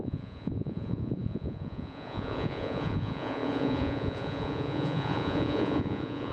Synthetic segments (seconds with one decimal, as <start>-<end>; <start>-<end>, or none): 0.0-6.3